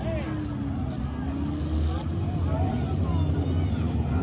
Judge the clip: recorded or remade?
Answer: recorded